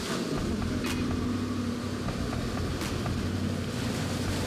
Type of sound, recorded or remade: recorded